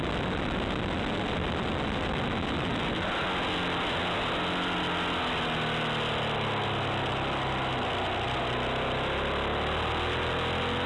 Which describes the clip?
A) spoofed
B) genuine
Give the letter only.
B